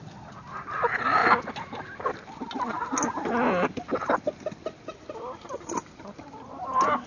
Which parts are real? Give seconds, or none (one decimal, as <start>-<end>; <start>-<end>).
0.0-7.1